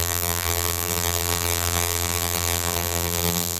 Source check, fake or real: fake